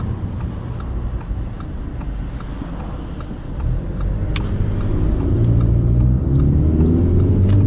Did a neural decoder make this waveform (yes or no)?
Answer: no